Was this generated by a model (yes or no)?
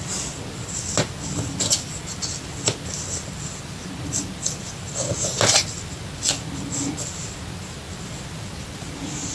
no